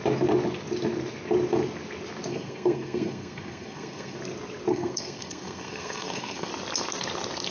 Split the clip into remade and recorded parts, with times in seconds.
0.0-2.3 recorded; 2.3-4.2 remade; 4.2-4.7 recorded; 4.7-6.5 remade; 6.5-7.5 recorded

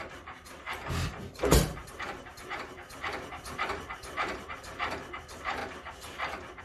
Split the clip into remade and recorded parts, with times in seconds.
0.0-5.6 remade; 5.6-6.6 recorded

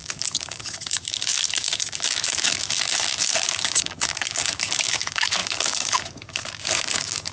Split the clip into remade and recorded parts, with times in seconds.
0.0-7.3 remade

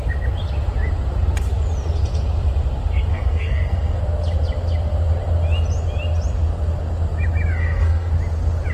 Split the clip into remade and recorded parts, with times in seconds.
0.0-3.1 recorded; 3.1-4.0 remade; 4.0-7.6 recorded; 7.6-8.1 remade; 8.1-8.7 recorded

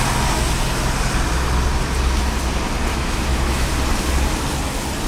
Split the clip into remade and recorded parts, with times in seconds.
0.0-2.9 recorded; 2.9-3.7 remade; 3.7-5.1 recorded

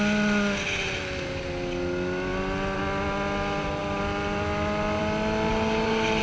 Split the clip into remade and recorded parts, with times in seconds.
0.0-2.3 recorded; 2.3-2.8 remade; 2.8-5.5 recorded; 5.5-6.2 remade

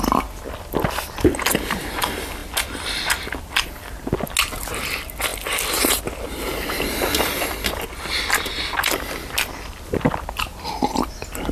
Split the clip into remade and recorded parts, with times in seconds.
0.0-11.5 recorded

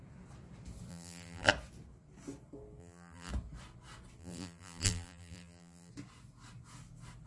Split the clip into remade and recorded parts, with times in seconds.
0.0-0.9 recorded; 0.9-1.5 remade; 1.5-2.8 recorded; 2.8-3.3 remade; 3.3-4.2 recorded; 4.2-5.9 remade; 5.9-7.3 recorded